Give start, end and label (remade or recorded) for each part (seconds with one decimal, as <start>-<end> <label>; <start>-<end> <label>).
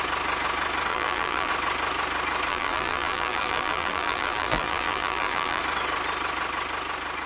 0.0-0.9 recorded; 0.9-1.5 remade; 1.5-2.5 recorded; 2.5-5.6 remade; 5.6-7.3 recorded